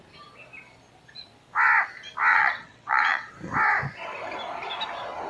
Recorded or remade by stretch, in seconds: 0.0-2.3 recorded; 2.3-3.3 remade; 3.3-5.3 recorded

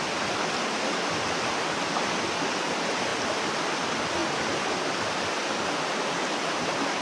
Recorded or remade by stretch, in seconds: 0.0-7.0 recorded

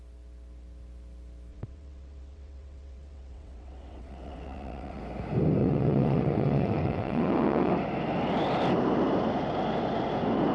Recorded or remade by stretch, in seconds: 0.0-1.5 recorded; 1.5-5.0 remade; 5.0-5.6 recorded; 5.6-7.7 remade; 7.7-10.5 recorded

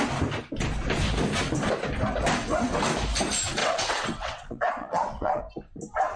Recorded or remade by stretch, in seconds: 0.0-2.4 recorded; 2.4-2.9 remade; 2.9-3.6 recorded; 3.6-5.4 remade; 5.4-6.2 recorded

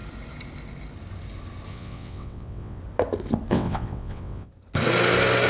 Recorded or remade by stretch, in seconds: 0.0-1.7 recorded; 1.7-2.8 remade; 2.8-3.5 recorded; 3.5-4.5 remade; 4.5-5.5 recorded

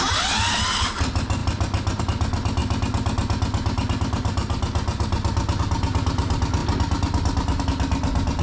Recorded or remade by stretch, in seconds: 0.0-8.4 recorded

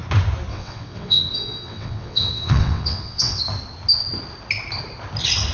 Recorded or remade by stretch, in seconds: 0.0-0.5 recorded; 0.5-3.4 remade; 3.4-5.5 recorded

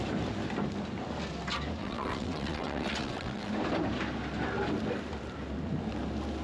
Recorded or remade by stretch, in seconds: 0.0-1.8 recorded; 1.8-3.5 remade; 3.5-6.4 recorded